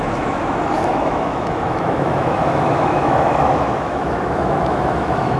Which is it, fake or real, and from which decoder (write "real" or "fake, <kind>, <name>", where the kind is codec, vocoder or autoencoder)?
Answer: fake, autoencoder, DAC-VAE